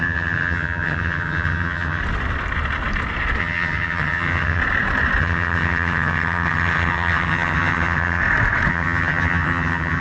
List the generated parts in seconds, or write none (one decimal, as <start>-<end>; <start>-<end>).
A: 0.0-2.0; 3.4-4.6; 5.2-8.2; 8.7-10.0